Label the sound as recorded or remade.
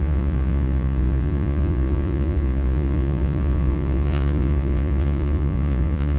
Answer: remade